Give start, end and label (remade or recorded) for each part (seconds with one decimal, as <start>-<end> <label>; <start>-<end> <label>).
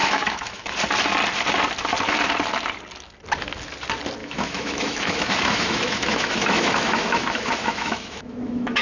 0.0-0.7 remade; 0.7-4.2 recorded; 4.2-8.8 remade